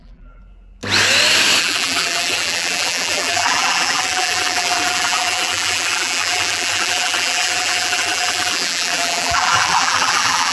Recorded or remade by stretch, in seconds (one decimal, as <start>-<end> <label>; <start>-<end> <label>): 0.0-0.4 remade; 0.4-1.6 recorded; 1.6-10.5 remade